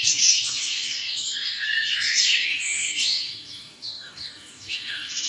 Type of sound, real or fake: fake